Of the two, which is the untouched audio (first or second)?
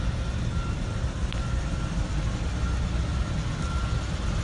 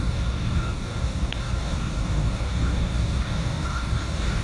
first